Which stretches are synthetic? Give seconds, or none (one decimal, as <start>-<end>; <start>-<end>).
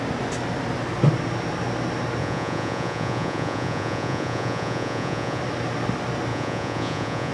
2.2-5.4; 6.3-7.3